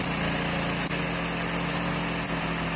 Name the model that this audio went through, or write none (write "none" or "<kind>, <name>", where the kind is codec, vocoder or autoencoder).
none